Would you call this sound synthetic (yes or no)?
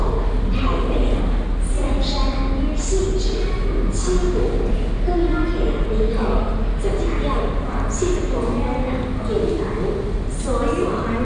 no